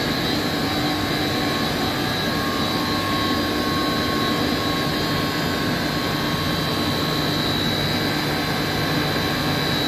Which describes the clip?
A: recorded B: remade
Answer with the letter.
A